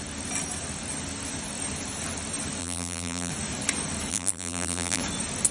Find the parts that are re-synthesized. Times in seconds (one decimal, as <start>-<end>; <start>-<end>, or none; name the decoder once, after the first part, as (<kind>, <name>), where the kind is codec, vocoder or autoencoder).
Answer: 2.6-3.3 (vocoder, BigVGAN v2); 4.1-5.0